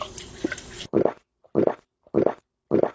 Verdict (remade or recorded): recorded